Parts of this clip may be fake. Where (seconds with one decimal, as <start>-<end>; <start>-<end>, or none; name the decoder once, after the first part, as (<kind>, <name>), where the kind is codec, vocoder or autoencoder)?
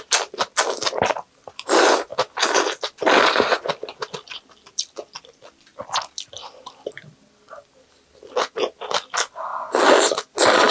none